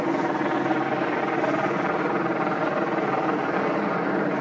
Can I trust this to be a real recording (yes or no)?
yes